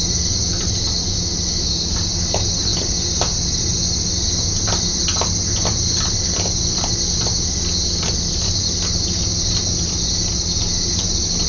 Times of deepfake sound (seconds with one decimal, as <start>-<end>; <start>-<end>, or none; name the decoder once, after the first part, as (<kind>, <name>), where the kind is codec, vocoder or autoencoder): none

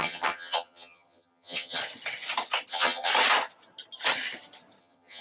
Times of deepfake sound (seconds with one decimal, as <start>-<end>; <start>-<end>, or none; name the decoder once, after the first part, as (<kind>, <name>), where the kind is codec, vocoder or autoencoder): 0.0-1.8 (vocoder, HiFi-GAN); 2.7-3.1; 4.8-5.2

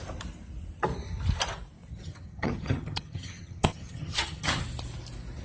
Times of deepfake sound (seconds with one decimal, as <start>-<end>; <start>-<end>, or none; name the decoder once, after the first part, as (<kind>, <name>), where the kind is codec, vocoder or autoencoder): 1.9-4.6 (vocoder, HiFi-GAN)

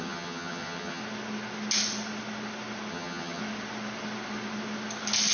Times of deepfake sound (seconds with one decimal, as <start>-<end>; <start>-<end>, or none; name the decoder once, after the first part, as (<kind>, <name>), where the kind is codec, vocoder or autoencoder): 0.0-1.0 (vocoder, HiFi-GAN); 2.9-3.4